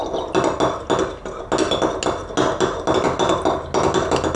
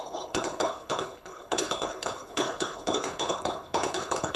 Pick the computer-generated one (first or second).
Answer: second